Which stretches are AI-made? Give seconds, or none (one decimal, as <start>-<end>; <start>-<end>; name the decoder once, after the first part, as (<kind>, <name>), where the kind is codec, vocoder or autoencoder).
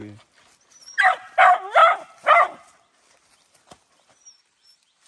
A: 0.0-1.0 (vocoder, BigVGAN v2); 1.8-5.1